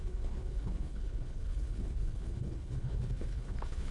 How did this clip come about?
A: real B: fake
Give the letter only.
B